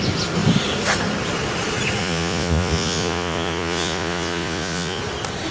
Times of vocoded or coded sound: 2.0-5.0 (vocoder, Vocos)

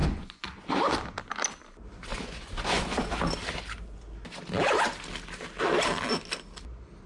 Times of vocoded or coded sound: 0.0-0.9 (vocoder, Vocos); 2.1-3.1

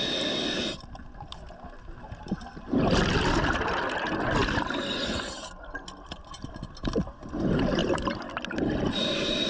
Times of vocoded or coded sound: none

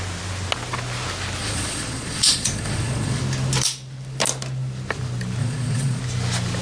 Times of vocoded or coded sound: 1.4-3.2 (vocoder, Vocos); 5.4-6.0

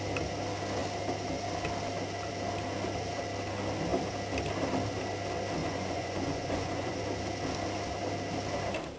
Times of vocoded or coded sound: 5.6-7.0 (vocoder, Vocos)

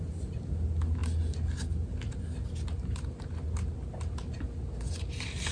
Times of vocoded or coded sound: none